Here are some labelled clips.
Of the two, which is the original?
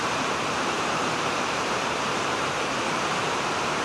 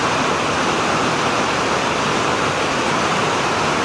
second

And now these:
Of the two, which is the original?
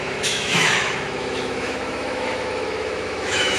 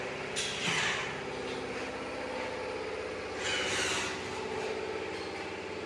second